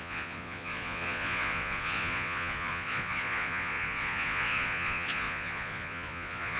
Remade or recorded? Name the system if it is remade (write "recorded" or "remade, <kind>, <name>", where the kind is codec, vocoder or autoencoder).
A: remade, vocoder, Vocos